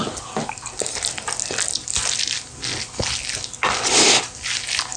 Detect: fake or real real